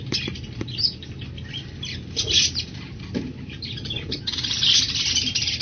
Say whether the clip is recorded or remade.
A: remade